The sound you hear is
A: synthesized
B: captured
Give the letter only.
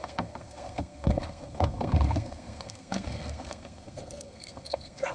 A